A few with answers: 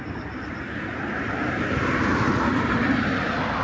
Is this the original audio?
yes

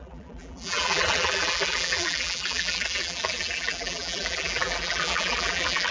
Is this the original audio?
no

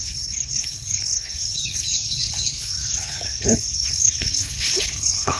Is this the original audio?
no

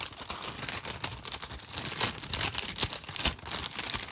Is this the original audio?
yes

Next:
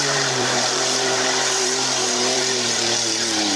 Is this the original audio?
no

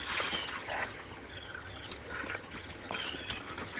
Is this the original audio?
no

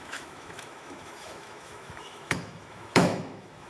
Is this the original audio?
no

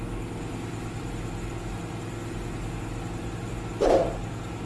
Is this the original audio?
yes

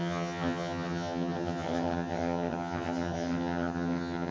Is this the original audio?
no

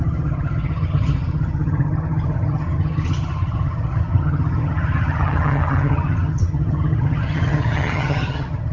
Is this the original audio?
no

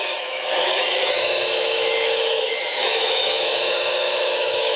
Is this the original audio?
no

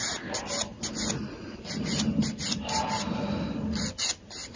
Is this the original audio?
yes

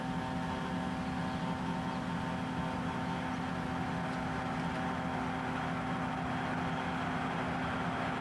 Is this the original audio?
yes